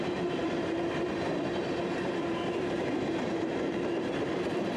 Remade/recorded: remade